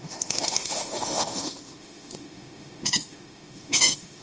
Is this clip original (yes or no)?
no